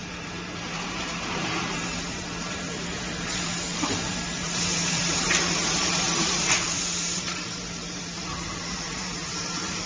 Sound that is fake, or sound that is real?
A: fake